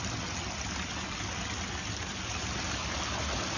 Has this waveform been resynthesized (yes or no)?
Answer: no